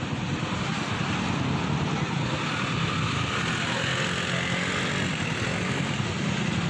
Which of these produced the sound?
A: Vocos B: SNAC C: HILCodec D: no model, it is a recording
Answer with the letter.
D